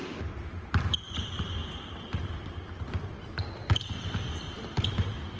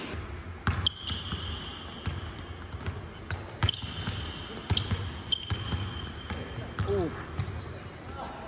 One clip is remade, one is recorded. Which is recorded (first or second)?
second